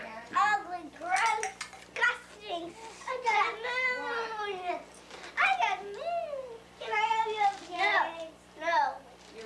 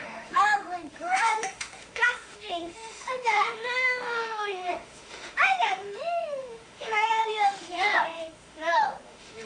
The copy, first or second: second